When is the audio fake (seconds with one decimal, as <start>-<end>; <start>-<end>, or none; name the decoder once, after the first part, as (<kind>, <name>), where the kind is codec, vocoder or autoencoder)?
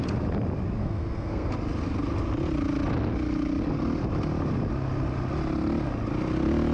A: 0.8-1.5 (codec, SNAC)